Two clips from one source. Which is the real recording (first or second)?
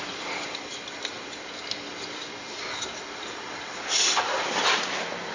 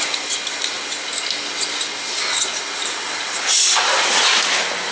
second